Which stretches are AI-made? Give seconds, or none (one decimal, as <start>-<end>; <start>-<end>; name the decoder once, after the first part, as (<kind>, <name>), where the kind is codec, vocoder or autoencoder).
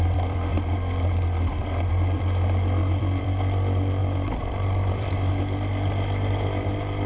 0.0-0.5 (vocoder, BigVGAN v2); 1.9-7.1